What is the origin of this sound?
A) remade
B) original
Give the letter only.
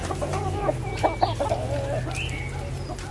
B